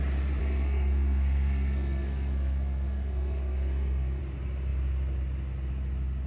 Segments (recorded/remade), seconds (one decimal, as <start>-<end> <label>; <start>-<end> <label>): 0.0-0.4 recorded; 0.4-4.2 remade; 4.2-6.3 recorded